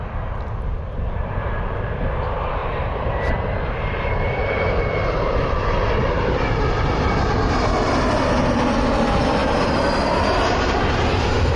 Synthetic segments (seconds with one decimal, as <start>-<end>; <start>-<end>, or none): 2.6-5.6